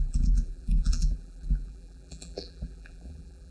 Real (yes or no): no